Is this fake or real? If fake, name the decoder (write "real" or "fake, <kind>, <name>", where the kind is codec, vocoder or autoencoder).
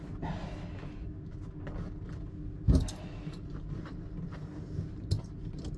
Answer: real